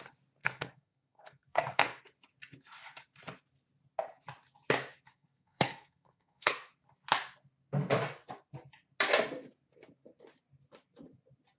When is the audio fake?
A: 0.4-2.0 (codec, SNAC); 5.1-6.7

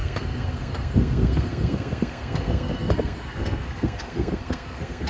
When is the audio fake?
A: 0.0-5.1 (codec, SNAC)